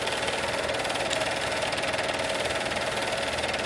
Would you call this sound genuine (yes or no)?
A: yes